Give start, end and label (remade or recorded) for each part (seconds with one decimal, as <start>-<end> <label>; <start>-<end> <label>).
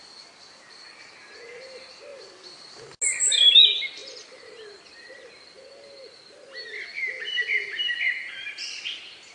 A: 0.0-4.0 recorded; 4.0-4.8 remade; 4.8-8.2 recorded; 8.2-8.8 remade; 8.8-9.3 recorded